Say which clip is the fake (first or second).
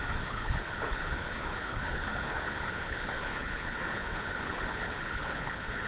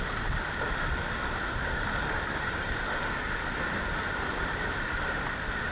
first